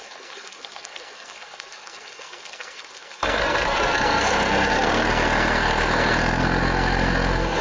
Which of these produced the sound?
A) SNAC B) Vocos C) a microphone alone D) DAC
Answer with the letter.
A